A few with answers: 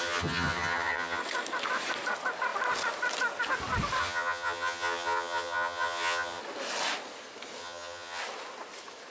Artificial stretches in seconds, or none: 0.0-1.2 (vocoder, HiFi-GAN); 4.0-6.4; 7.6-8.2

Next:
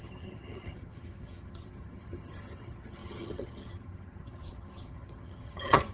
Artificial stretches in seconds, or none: 0.0-5.9 (vocoder, HiFi-GAN)

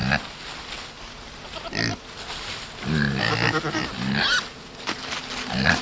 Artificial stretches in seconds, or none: none

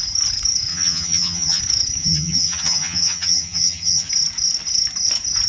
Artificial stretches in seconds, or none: 0.7-1.6 (vocoder, HiFi-GAN); 2.0-4.1